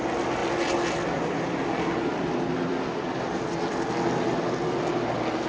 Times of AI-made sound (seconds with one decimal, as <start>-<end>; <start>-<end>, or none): none